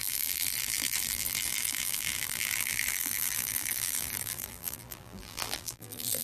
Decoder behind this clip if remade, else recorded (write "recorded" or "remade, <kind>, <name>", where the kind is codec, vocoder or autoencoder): remade, vocoder, BigVGAN v2